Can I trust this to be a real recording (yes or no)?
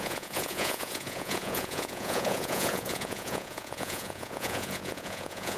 no